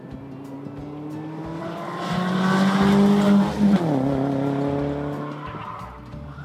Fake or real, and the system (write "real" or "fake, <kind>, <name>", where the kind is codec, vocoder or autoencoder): real